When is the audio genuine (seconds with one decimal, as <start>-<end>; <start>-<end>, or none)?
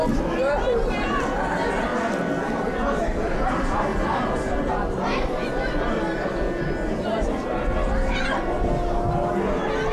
0.0-9.9